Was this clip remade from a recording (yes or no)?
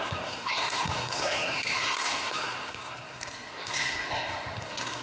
yes